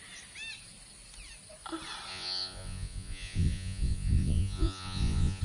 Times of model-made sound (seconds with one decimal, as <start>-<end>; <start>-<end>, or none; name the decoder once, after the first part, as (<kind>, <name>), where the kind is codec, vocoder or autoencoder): 2.1-5.4 (vocoder, Vocos)